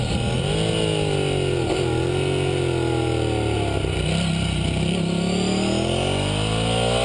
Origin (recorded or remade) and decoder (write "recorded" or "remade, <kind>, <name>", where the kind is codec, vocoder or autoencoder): recorded